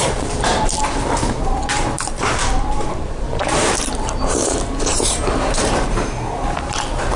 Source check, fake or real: fake